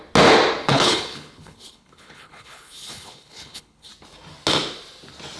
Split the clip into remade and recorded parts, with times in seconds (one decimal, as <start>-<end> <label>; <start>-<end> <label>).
0.0-0.7 recorded; 0.7-3.9 remade; 3.9-5.4 recorded